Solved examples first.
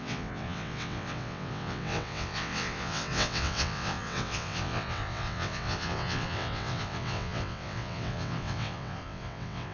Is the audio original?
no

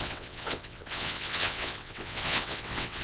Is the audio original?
no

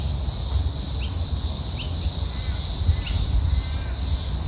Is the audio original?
yes